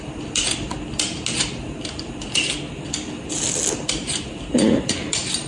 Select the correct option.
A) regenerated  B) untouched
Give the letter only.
B